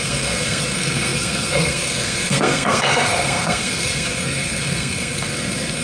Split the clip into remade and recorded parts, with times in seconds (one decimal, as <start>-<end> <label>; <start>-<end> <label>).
0.0-5.8 remade